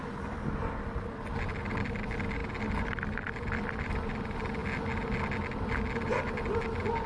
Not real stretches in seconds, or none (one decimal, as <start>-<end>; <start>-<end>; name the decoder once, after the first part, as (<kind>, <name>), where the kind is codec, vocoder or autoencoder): none